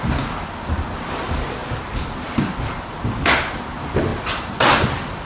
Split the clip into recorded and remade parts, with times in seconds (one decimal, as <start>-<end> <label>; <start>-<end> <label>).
0.0-5.2 recorded